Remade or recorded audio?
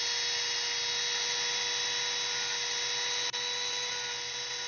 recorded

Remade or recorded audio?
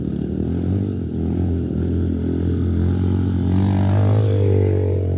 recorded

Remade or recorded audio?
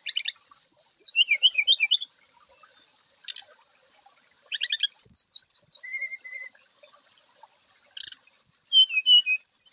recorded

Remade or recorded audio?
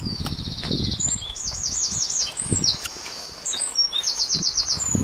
remade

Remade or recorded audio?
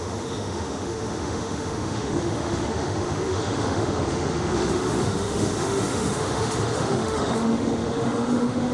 remade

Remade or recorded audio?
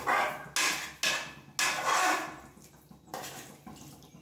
recorded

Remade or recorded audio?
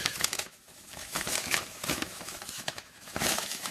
remade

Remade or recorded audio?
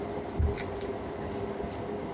recorded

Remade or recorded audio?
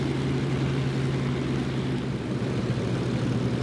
recorded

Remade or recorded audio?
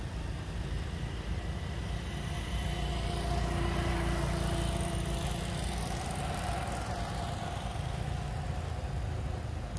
recorded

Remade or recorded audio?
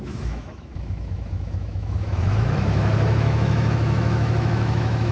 remade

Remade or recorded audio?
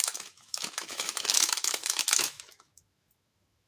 remade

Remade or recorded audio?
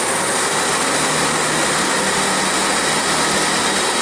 recorded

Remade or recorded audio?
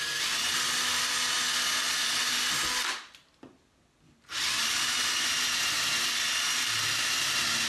recorded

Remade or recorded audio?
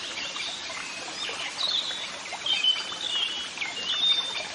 recorded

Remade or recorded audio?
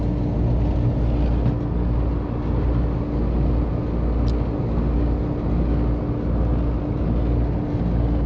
recorded